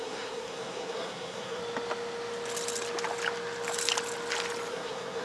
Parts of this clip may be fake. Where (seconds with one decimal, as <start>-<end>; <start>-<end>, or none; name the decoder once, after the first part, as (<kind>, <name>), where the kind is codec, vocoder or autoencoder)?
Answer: 0.0-1.6 (codec, SNAC); 4.7-5.2